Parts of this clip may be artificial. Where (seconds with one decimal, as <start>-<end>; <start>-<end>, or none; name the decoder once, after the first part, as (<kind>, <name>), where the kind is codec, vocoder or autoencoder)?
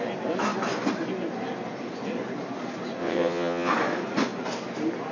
3.0-3.7 (vocoder, WaveNeXt)